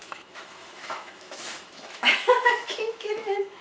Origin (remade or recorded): remade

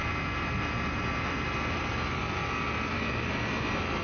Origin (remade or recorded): recorded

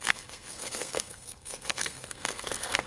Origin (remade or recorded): remade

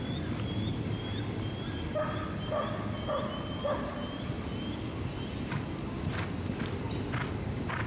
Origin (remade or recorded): recorded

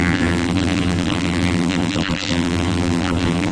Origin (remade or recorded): remade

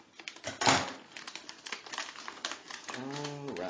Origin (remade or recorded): recorded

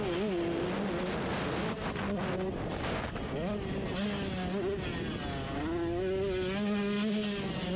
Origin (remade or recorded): recorded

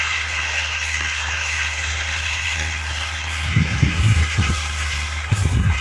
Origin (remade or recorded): remade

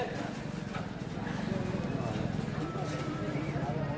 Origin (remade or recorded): recorded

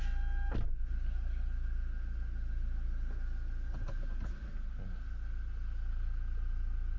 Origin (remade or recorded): recorded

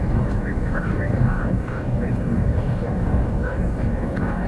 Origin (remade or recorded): remade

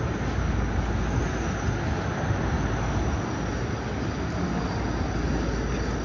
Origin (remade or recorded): recorded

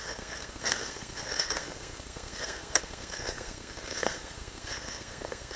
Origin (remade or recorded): remade